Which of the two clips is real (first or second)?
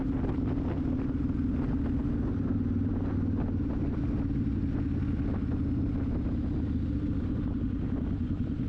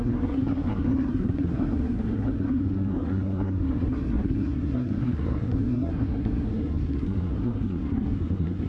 first